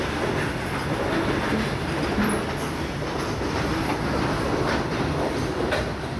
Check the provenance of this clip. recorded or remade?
recorded